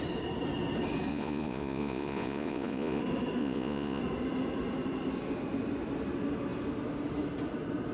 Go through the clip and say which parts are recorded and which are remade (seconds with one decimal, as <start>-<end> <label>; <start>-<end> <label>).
0.0-1.1 recorded; 1.1-3.0 remade; 3.0-3.4 recorded; 3.4-4.0 remade; 4.0-7.9 recorded